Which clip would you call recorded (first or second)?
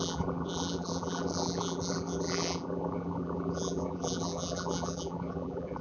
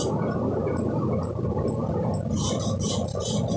second